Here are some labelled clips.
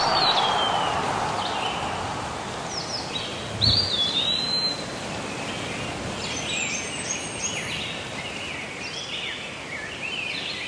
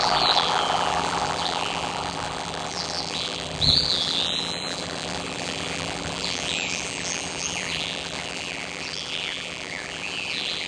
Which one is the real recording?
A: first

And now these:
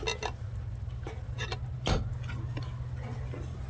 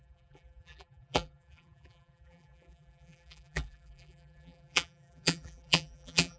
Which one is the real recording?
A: first